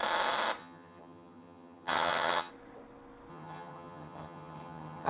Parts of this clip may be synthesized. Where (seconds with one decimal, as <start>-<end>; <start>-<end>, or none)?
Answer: 0.6-2.5; 3.3-5.1